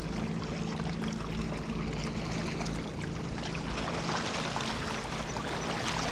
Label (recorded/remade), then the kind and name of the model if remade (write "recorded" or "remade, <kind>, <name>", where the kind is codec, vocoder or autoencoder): recorded